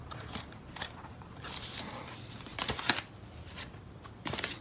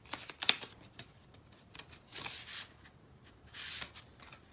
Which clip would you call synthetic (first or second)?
first